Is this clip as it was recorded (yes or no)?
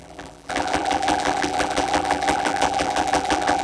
no